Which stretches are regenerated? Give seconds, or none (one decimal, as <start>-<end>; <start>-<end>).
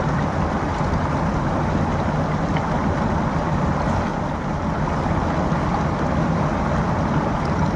none